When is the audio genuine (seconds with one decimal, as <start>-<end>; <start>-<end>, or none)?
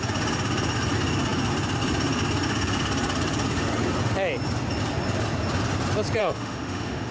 0.0-6.2